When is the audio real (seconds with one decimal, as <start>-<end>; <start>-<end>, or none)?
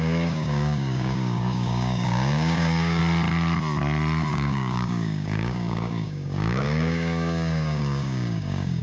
3.0-4.3